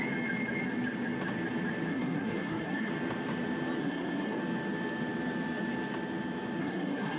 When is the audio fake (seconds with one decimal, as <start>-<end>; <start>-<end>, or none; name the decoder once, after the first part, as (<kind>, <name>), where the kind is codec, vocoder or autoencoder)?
1.9-2.9 (codec, SNAC); 3.8-4.4; 6.6-7.2